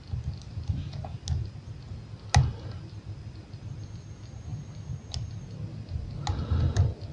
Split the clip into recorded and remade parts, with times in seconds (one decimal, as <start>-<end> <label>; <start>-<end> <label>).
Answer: 0.0-7.1 recorded